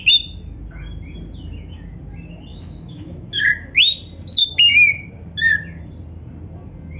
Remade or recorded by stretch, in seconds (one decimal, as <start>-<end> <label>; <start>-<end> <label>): 0.0-2.5 recorded; 2.5-3.5 remade; 3.5-4.4 recorded; 4.4-4.9 remade; 4.9-7.0 recorded